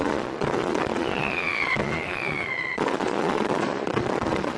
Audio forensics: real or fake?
fake